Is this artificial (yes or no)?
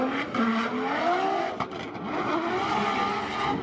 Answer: no